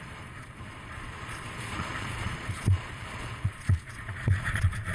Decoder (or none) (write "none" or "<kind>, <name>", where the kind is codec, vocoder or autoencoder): vocoder, Vocos